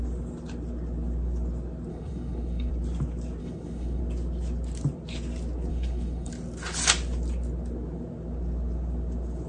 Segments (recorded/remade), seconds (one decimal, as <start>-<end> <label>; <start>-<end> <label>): 0.0-1.9 recorded; 1.9-2.7 remade; 2.7-3.4 recorded; 3.4-4.0 remade; 4.0-5.7 recorded; 5.7-6.3 remade; 6.3-9.5 recorded